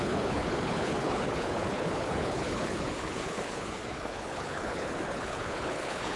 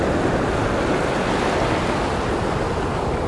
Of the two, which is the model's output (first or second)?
first